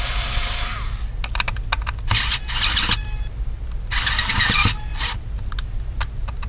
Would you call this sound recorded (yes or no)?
yes